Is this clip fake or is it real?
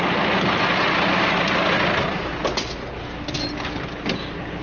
real